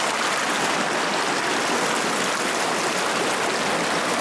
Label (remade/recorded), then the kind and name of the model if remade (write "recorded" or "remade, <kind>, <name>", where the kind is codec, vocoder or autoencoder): recorded